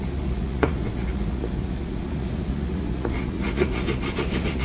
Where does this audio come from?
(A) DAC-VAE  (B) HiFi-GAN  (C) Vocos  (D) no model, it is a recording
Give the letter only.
C